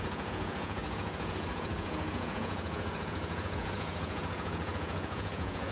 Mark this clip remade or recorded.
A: remade